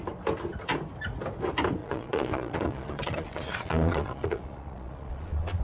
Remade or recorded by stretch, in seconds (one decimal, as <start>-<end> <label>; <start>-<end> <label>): 0.0-1.8 recorded; 1.8-5.6 remade

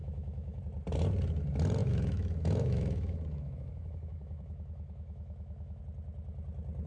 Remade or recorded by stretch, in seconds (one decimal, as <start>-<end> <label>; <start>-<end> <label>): 0.0-0.6 remade; 0.6-1.8 recorded; 1.8-5.8 remade; 5.8-6.9 recorded

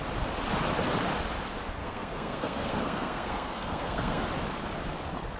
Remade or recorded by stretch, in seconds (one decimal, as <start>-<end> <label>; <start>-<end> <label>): 0.0-1.8 recorded; 1.8-4.2 remade; 4.2-5.4 recorded

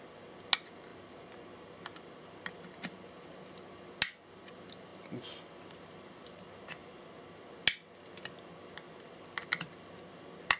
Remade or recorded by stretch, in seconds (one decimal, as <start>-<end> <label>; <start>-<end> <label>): 0.0-10.6 recorded

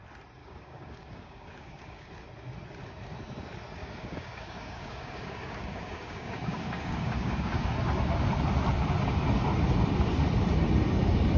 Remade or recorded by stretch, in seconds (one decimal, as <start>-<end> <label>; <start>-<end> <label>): 0.0-0.4 recorded; 0.4-2.1 remade; 2.1-3.8 recorded; 3.8-7.7 remade; 7.7-11.4 recorded

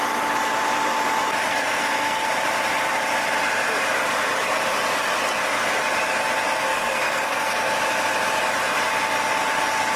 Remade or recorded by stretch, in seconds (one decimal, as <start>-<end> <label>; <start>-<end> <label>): 0.0-1.5 recorded; 1.5-2.3 remade; 2.3-6.7 recorded; 6.7-7.7 remade; 7.7-10.0 recorded